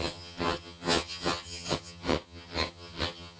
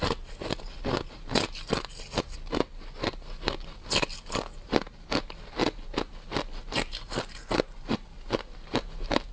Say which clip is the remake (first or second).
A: first